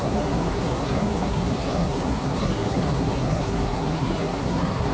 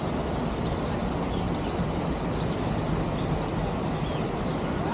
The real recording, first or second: second